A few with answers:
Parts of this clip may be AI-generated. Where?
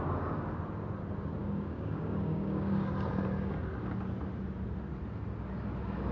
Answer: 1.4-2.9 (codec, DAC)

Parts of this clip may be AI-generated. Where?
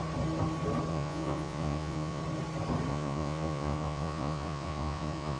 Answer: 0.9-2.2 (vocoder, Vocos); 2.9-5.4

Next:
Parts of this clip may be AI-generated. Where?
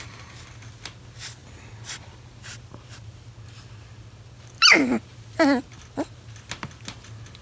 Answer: none